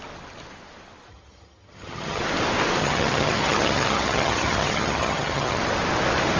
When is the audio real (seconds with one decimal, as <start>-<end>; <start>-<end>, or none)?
0.0-1.1; 2.2-2.8; 5.6-6.4